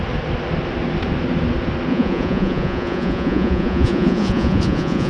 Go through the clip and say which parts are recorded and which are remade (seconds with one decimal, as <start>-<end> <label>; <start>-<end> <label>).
0.0-1.9 recorded; 1.9-5.1 remade